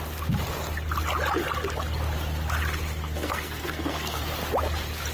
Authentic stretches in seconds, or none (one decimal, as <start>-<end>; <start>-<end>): 0.0-3.0; 4.2-5.1